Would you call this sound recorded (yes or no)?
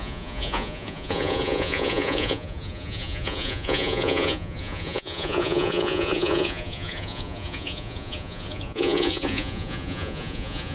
no